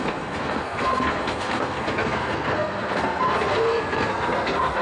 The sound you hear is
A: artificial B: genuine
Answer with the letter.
A